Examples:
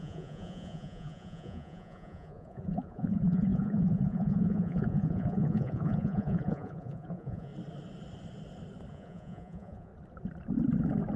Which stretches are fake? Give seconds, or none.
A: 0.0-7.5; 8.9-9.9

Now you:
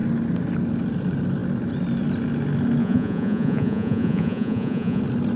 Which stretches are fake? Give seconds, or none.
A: 2.8-5.0

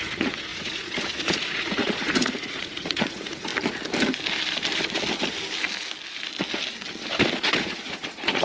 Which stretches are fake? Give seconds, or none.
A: 0.0-3.5; 7.4-8.4

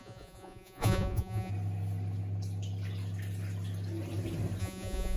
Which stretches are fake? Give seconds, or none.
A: 0.0-1.5; 4.6-5.2

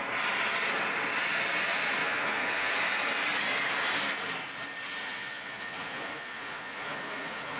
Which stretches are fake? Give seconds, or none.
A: 2.0-2.7; 5.1-7.6